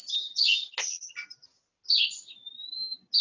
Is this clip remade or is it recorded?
recorded